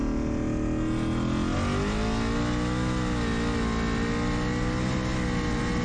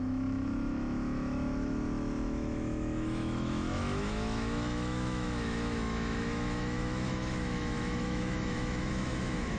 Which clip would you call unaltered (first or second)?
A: first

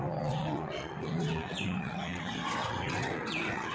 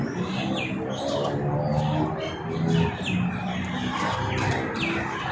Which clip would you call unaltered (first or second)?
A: second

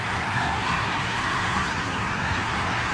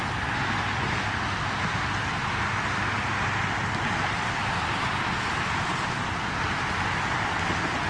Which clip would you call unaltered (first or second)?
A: second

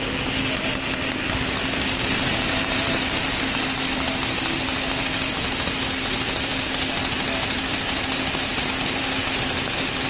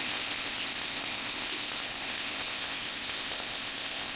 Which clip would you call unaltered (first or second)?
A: first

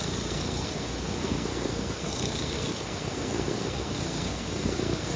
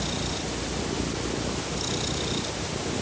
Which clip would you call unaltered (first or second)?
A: second